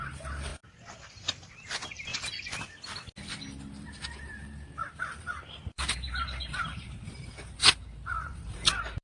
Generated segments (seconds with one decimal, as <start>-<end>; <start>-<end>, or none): 0.0-0.5; 1.1-2.1; 4.9-9.0